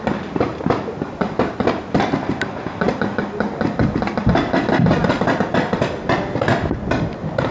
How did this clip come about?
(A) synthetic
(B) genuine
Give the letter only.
B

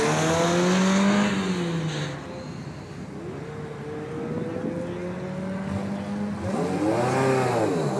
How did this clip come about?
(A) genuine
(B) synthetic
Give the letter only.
A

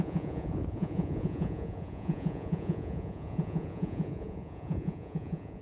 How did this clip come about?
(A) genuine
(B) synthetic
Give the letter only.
B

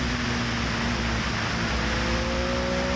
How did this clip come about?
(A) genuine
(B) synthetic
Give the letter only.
A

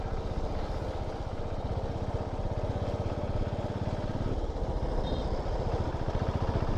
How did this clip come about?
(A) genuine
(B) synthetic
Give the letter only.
A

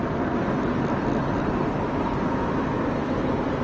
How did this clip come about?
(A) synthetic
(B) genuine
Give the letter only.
B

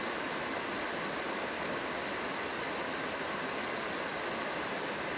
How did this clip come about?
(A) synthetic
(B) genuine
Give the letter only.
B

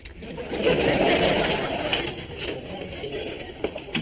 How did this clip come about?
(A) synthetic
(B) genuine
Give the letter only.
B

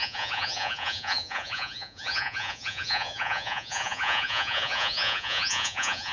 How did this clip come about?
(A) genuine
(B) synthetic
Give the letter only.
B